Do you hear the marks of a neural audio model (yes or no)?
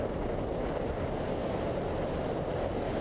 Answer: no